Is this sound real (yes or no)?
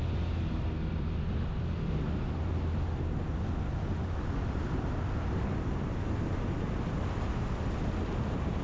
yes